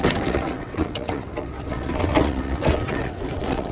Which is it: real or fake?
fake